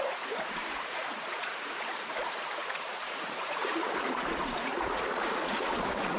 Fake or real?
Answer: fake